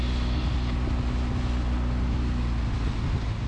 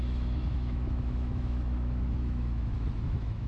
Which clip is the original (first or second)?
first